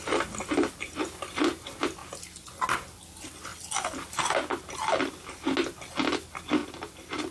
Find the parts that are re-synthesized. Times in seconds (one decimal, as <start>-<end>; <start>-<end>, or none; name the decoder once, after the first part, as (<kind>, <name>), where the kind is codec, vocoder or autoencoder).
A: none